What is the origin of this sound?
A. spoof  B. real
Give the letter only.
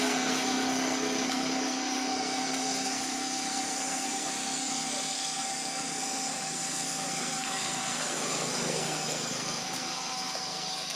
A